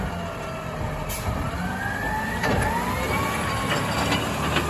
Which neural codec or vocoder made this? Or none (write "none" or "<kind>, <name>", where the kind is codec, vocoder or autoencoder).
none